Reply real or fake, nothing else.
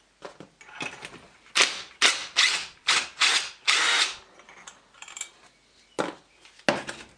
real